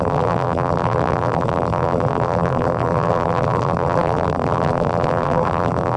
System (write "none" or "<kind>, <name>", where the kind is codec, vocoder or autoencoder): vocoder, BigVGAN v2